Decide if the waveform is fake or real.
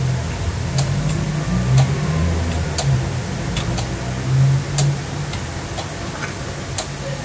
real